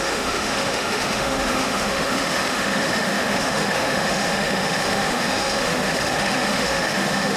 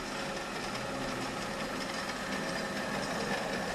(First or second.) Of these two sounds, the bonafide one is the second